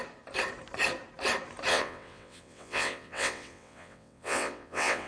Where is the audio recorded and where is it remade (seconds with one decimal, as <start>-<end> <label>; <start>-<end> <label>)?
0.0-1.7 recorded; 1.7-5.1 remade